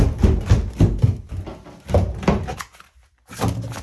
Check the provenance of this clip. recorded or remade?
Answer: recorded